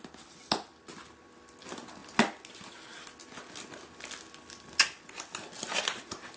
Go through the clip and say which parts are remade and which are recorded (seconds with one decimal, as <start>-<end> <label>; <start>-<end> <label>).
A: 0.0-6.4 recorded